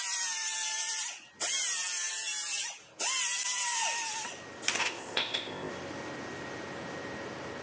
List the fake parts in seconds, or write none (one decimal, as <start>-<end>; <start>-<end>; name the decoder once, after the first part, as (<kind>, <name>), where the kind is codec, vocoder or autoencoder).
4.8-5.7 (codec, ZipCodec)